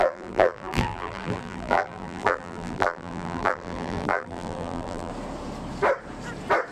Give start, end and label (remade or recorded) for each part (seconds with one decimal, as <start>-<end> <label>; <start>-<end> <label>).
0.0-5.1 remade; 5.1-6.7 recorded